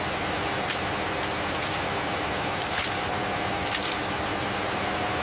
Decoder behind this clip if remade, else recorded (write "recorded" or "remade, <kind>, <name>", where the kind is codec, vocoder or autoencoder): recorded